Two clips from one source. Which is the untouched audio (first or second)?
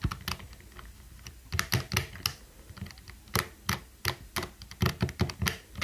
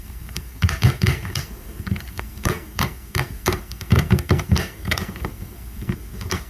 first